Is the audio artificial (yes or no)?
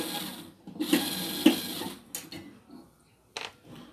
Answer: no